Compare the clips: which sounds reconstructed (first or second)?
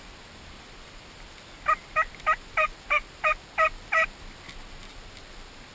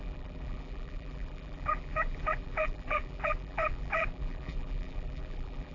second